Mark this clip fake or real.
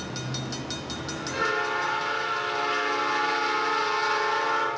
real